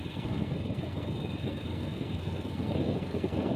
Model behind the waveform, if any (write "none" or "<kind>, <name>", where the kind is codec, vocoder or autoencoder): codec, SNAC